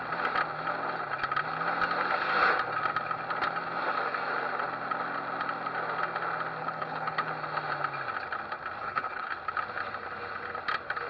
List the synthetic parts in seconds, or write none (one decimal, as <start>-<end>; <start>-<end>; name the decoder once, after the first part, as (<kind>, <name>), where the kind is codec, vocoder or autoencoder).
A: 6.6-7.3 (codec, HILCodec); 8.8-9.3